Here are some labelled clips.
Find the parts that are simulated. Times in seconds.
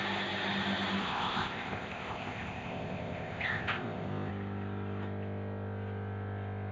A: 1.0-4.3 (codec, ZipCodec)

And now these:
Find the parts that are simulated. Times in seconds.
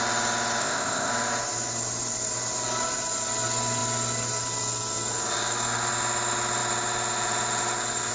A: 0.6-1.1 (codec, ZipCodec)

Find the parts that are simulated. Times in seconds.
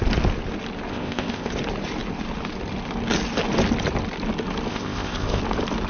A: 0.9-1.5 (codec, ZipCodec); 4.7-5.4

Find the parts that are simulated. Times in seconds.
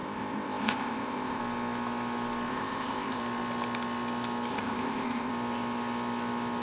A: 0.0-1.4 (codec, ZipCodec); 2.5-3.2; 4.5-5.3